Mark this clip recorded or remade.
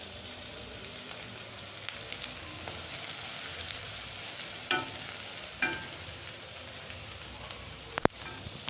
recorded